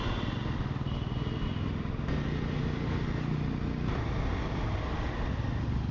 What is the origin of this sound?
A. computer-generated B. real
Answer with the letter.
B